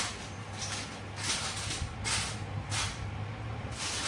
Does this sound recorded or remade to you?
recorded